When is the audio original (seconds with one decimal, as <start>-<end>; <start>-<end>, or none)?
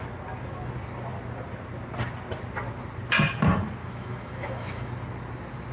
0.0-3.8; 4.9-5.7